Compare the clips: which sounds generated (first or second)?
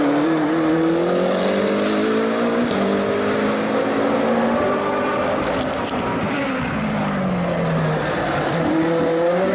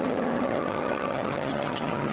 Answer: second